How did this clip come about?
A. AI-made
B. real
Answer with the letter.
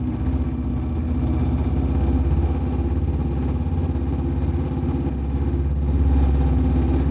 B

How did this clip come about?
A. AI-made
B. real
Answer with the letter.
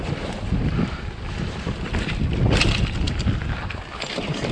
B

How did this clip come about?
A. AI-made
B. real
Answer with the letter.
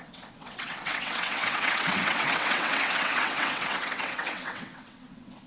A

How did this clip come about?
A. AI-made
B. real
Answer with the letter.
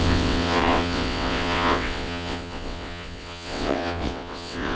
A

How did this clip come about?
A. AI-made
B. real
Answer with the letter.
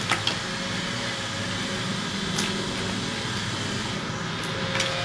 B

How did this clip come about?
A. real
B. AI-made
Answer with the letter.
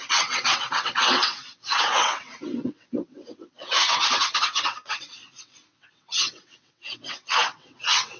B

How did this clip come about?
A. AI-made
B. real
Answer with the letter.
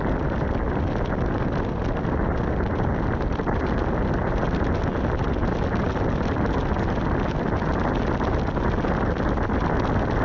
B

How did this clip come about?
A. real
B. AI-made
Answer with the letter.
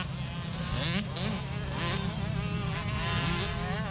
A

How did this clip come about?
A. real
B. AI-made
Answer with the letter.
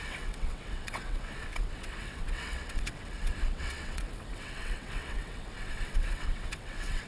B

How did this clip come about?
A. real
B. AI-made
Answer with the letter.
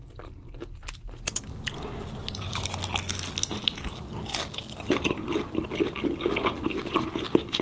A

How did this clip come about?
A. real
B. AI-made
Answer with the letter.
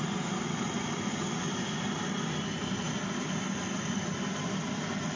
A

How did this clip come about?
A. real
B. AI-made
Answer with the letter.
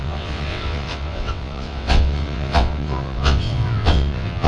B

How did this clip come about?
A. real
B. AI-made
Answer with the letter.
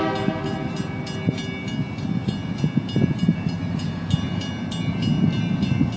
A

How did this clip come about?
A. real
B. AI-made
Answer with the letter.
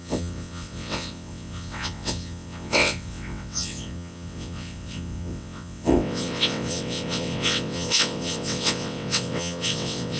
B